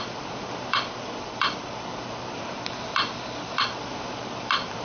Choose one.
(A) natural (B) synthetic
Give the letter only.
B